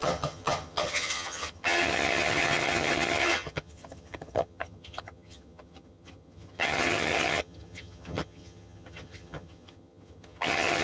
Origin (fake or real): fake